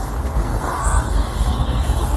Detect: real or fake fake